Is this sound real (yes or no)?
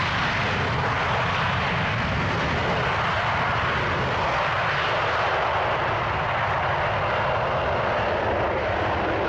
yes